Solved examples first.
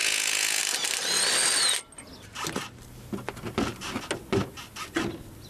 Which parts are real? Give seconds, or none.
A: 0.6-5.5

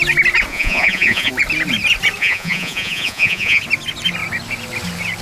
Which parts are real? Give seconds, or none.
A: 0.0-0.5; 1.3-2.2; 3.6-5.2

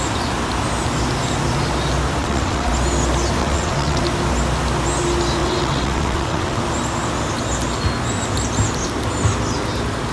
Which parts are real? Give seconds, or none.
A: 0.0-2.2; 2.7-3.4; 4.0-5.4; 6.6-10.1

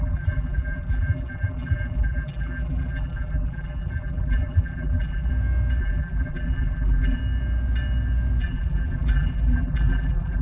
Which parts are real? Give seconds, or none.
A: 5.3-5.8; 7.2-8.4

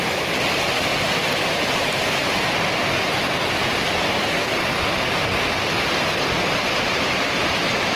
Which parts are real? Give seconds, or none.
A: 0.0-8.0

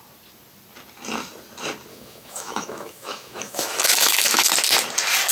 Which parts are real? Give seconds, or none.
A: 0.0-1.9; 4.5-5.3

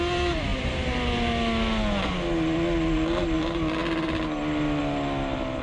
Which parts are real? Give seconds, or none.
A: 0.0-5.6

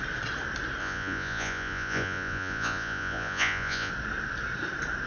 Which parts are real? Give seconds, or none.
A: 0.0-0.8; 3.9-5.1